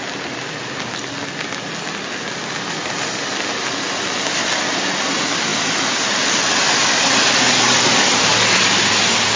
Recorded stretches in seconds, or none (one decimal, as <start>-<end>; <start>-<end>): 0.0-9.4